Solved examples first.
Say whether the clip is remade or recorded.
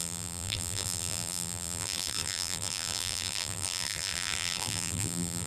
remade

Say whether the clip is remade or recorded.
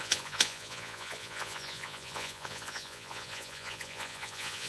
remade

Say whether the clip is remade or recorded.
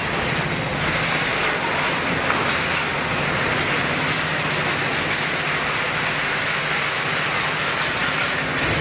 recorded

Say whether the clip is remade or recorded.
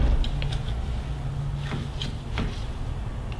recorded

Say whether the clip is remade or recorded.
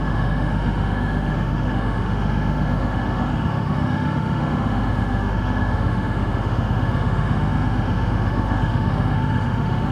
remade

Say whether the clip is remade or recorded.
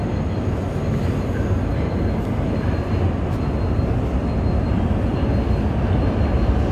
recorded